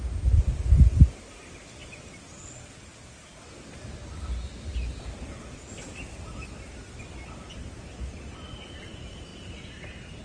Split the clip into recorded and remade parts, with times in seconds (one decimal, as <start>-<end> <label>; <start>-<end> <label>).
0.0-10.2 recorded